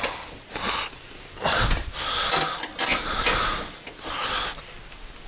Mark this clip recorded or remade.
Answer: recorded